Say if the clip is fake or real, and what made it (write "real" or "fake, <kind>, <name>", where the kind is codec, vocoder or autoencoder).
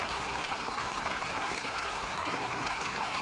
fake, codec, SNAC